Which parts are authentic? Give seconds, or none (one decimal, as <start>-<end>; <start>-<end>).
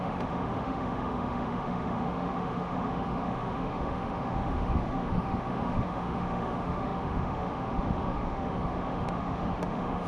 none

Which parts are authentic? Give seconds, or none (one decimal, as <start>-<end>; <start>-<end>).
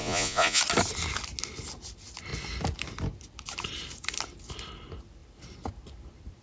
0.6-6.4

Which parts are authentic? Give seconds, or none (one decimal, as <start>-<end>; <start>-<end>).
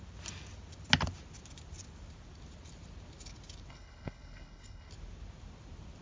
0.0-3.7; 4.9-6.0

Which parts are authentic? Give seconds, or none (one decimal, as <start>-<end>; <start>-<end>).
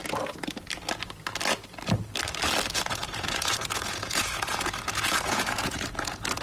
0.0-2.7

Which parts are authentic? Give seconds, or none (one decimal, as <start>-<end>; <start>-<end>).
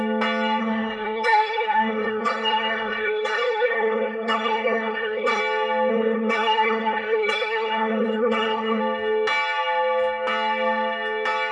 0.0-0.6; 5.4-5.9; 8.8-11.5